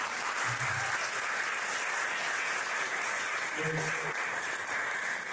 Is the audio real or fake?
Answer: real